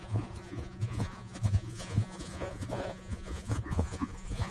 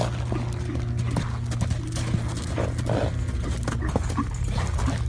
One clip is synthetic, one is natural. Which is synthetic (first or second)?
first